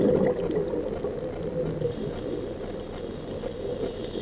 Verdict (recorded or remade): recorded